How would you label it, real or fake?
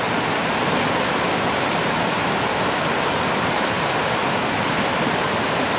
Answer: real